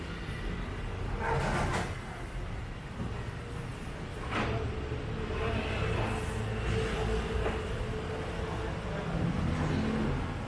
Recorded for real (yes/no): yes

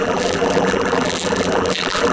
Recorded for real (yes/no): no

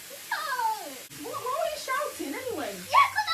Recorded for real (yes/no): no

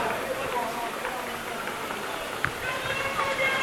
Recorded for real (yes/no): no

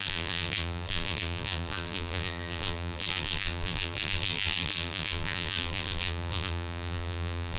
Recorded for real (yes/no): no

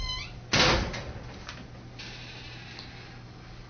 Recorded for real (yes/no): yes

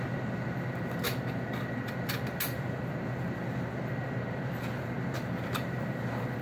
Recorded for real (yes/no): yes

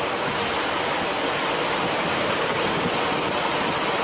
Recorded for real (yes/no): no